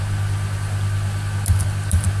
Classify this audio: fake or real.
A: real